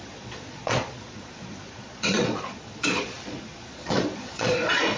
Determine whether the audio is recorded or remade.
remade